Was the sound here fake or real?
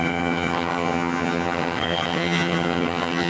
fake